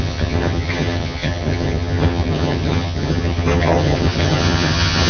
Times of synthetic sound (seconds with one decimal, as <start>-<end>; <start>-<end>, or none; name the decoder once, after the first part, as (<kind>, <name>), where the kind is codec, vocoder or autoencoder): 0.0-5.1 (vocoder, HiFi-GAN)